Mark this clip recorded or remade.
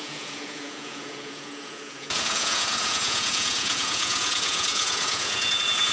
remade